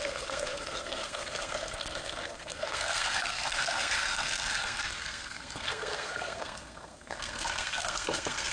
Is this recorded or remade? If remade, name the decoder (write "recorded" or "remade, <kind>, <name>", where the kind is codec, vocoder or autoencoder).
remade, codec, SNAC